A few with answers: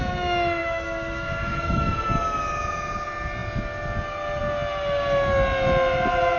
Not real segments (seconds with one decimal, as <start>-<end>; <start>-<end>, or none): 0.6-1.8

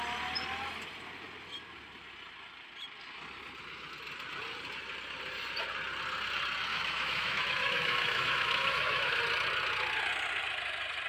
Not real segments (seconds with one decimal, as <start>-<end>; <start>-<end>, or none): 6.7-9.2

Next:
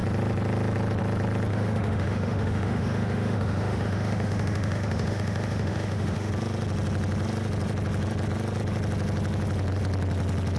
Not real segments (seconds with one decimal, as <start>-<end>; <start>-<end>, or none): 1.5-6.3

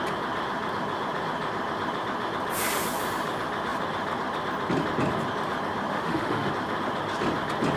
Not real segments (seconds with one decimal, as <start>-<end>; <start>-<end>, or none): 5.9-6.5

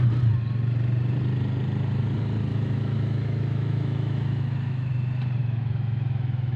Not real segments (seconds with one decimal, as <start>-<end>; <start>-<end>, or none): 2.5-4.9; 5.4-6.6

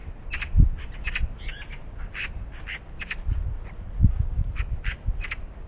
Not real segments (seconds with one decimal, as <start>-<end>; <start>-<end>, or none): none